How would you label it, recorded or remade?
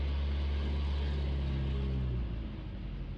recorded